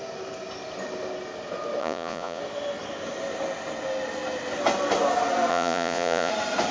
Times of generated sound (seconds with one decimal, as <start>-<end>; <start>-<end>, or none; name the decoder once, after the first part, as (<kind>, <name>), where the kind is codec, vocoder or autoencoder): 1.8-2.4 (vocoder, Vocos); 5.5-6.3